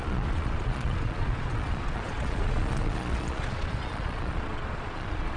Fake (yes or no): yes